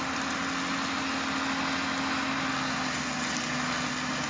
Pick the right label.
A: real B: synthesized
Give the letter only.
A